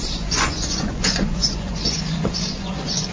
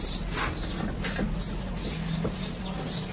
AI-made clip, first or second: first